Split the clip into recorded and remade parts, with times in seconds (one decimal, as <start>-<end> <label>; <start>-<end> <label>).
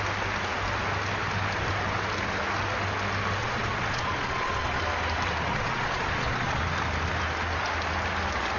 0.0-3.4 recorded; 3.4-4.8 remade; 4.8-5.5 recorded; 5.5-6.6 remade; 6.6-8.6 recorded